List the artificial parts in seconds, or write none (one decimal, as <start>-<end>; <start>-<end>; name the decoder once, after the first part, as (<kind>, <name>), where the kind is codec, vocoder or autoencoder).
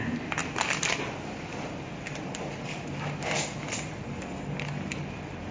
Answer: none